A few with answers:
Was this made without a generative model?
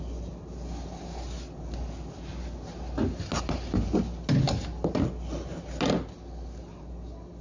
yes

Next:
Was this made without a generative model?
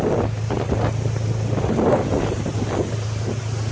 yes